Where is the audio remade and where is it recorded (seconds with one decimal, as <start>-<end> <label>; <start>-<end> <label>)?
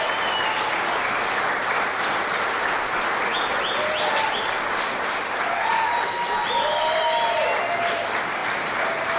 0.0-9.2 recorded